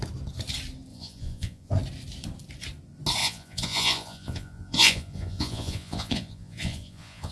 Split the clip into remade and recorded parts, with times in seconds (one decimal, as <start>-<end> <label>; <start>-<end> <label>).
0.0-0.9 recorded; 0.9-1.7 remade; 1.7-3.2 recorded; 3.2-7.3 remade